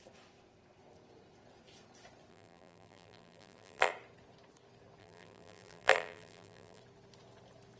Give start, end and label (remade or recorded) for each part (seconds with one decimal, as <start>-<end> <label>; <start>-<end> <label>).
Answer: 0.0-2.3 recorded; 2.3-3.9 remade; 3.9-5.0 recorded; 5.0-6.8 remade; 6.8-7.8 recorded